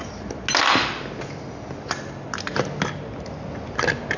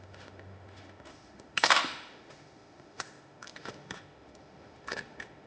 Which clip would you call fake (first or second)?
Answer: second